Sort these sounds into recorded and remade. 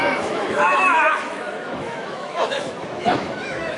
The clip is remade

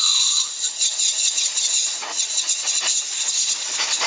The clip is recorded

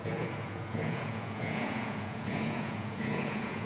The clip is remade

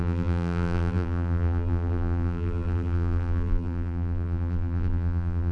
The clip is remade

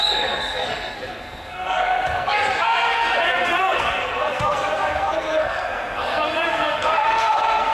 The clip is remade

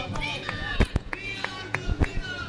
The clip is remade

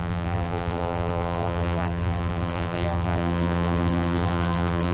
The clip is remade